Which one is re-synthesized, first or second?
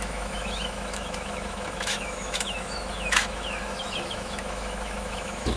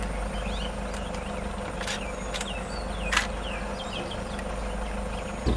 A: first